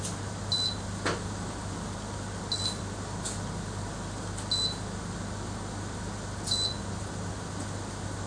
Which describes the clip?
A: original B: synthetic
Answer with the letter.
A